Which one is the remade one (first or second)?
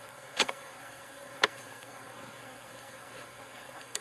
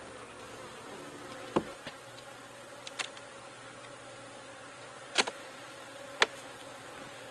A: first